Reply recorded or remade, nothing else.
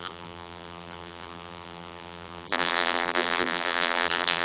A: remade